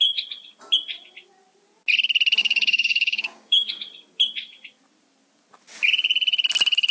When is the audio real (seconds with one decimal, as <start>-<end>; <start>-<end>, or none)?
0.0-2.4; 3.7-6.9